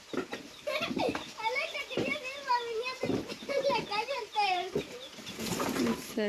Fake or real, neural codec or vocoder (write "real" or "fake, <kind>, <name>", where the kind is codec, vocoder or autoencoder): fake, vocoder, BigVGAN v2